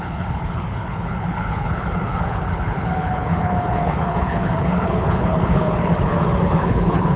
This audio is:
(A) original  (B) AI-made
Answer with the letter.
B